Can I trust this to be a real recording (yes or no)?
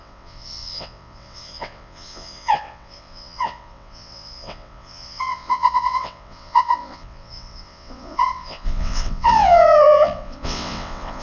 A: no